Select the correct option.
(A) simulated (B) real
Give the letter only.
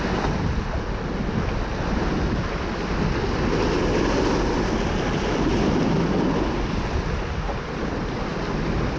B